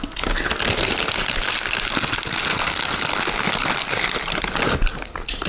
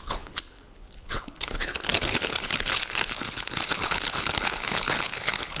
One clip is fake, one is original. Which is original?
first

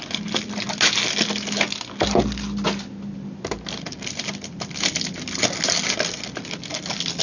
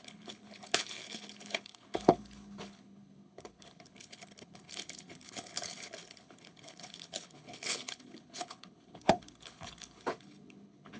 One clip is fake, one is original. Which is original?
first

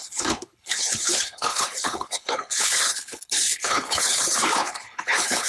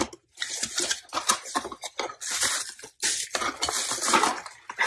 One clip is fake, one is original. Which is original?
second